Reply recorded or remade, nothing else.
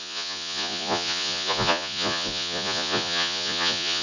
remade